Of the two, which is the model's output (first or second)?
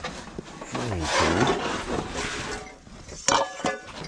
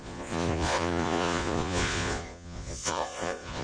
second